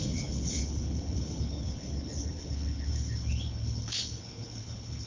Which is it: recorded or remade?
remade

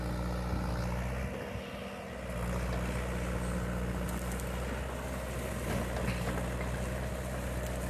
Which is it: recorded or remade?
recorded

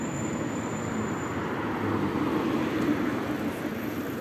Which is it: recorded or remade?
recorded